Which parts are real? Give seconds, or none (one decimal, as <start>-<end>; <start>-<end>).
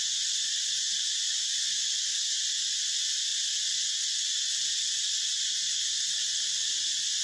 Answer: 0.0-7.2